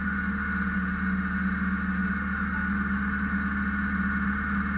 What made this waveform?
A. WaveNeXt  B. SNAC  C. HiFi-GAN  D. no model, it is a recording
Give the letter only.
D